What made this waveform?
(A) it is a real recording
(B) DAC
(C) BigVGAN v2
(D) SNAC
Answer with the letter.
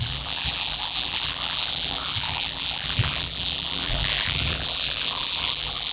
C